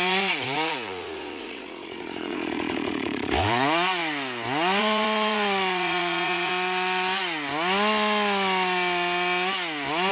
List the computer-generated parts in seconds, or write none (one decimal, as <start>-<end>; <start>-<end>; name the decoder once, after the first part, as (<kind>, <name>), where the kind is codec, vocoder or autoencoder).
0.0-4.0 (vocoder, Vocos); 4.8-6.5